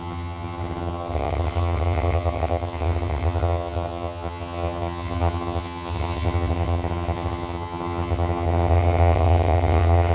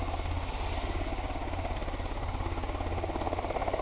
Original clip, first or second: second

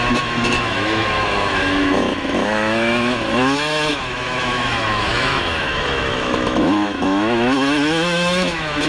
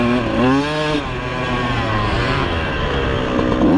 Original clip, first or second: second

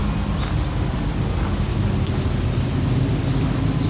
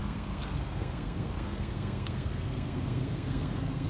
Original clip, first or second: first